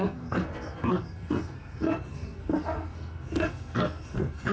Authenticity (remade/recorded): remade